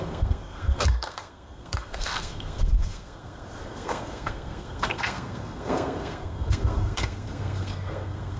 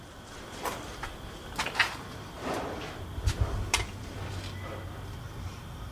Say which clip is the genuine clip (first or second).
second